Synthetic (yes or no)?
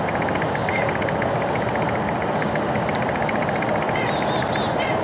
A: no